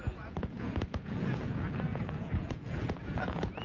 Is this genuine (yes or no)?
no